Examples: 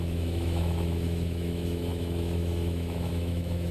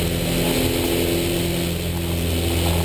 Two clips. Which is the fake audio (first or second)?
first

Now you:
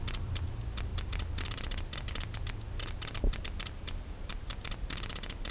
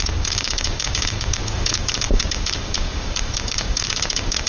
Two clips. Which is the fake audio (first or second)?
second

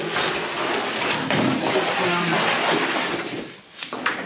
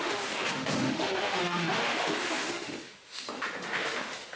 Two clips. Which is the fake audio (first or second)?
second